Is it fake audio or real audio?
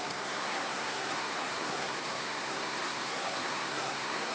fake